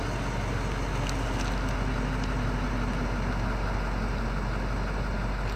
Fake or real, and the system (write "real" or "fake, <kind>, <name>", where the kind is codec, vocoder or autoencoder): real